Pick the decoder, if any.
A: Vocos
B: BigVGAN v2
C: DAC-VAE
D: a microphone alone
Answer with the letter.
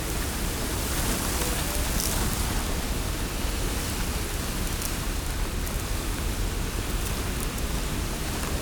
D